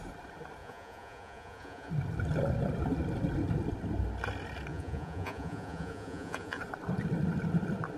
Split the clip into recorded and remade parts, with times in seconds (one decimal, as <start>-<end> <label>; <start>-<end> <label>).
0.0-0.6 recorded; 0.6-1.9 remade; 1.9-4.7 recorded; 4.7-6.6 remade; 6.6-8.0 recorded